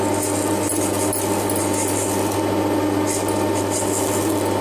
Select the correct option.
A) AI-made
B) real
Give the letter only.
B